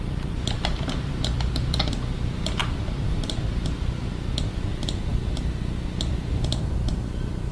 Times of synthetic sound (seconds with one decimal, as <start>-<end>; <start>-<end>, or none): 0.0-5.1; 6.3-7.5